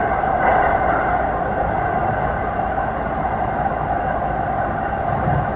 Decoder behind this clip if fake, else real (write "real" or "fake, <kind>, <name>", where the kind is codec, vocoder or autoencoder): real